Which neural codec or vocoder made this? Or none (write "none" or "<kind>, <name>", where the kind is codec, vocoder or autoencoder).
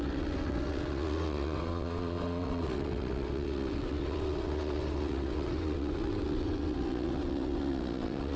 vocoder, WaveNeXt